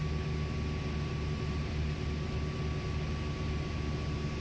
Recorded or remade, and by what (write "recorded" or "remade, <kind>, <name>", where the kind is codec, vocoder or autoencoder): recorded